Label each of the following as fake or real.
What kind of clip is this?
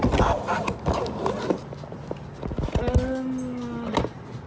real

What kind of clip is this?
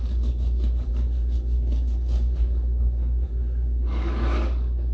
fake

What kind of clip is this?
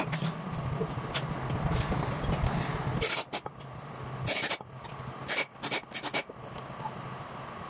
real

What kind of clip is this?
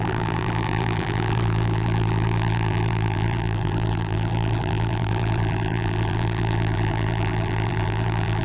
fake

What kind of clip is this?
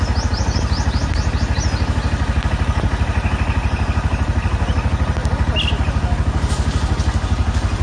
real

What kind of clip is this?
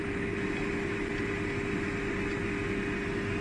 real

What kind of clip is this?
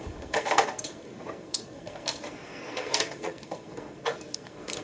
fake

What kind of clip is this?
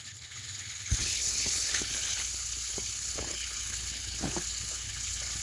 fake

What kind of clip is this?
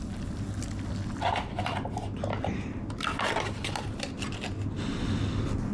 real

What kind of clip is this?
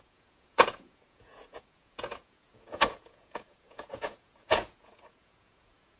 fake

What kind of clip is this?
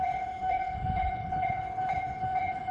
fake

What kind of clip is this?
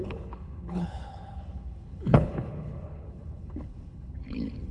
fake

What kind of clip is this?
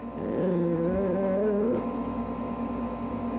real